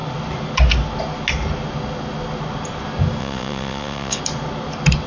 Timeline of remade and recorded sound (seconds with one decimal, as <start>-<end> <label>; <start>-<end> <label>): 0.0-3.2 recorded; 3.2-4.2 remade; 4.2-5.1 recorded